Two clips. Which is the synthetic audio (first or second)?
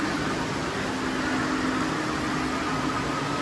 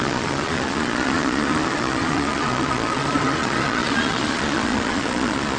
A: second